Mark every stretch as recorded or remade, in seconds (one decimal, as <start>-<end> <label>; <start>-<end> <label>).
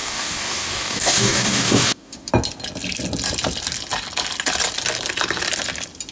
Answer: 0.0-2.3 remade; 2.3-6.1 recorded